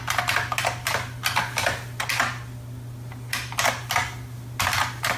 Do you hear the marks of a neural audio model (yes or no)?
no